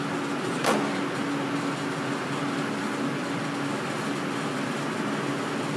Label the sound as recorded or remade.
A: recorded